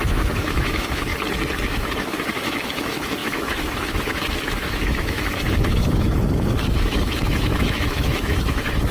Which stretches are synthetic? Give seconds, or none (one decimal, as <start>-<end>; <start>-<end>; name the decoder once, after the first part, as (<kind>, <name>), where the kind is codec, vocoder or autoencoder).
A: 0.0-1.1 (autoencoder, DAC-VAE); 1.6-8.9